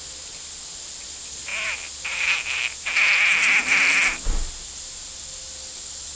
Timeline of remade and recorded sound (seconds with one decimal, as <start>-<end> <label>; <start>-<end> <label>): 0.0-6.1 recorded